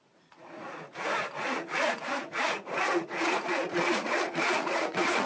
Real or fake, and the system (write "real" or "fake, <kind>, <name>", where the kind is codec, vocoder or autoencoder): fake, vocoder, Vocos